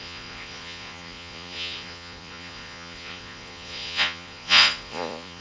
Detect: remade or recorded remade